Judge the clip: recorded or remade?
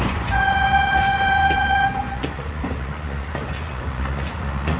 remade